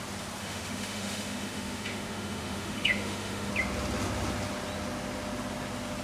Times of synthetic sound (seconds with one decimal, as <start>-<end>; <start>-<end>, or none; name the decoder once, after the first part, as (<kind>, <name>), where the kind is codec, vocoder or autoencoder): 0.4-3.5 (autoencoder, DAC-VAE)